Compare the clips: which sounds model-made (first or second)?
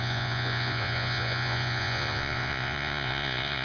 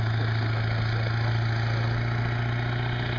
first